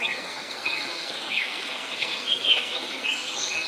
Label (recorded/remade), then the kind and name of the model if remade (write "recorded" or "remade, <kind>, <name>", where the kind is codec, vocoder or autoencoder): remade, codec, SNAC